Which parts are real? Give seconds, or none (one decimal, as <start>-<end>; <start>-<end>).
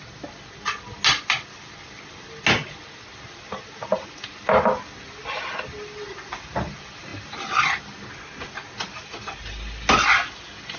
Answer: 0.0-10.8